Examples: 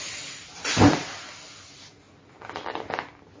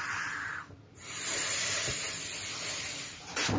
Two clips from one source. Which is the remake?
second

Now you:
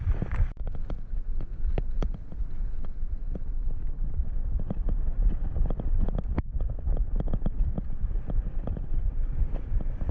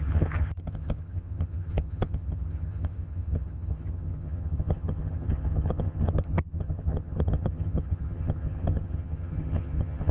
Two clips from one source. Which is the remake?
second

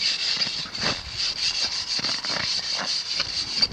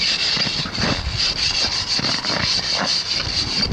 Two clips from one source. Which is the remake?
first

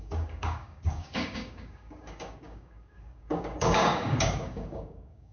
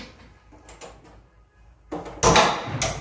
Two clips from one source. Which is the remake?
first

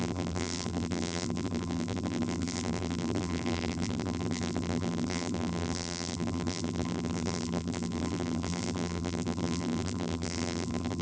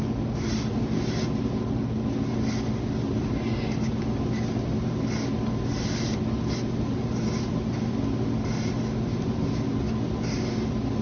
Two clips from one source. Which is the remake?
first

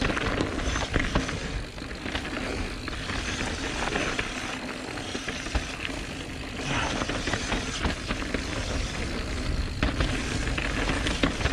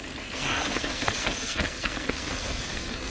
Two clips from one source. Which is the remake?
second